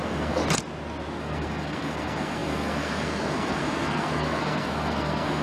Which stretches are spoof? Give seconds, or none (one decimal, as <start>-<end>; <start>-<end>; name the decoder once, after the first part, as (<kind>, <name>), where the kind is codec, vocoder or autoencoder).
0.0-0.4 (codec, SNAC); 1.2-5.4

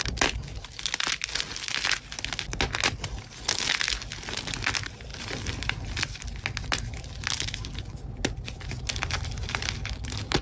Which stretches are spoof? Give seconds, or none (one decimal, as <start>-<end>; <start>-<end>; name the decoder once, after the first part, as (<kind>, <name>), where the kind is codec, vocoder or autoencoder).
5.1-6.3 (vocoder, BigVGAN v2)